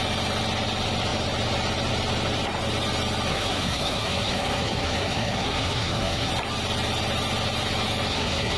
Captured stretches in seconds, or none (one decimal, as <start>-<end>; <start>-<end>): 0.0-3.3; 6.3-8.1